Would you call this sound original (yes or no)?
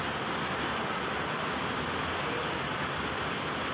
yes